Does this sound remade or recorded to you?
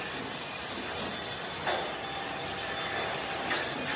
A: recorded